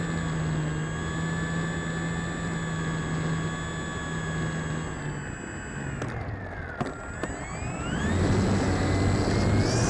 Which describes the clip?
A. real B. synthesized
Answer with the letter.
A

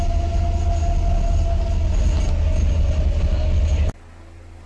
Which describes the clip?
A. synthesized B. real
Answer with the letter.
B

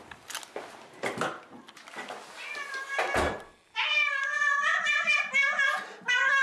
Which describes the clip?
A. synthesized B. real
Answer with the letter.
B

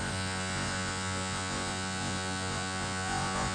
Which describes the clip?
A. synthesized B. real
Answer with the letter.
A